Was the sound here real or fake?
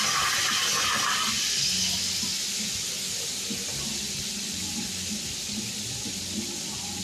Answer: real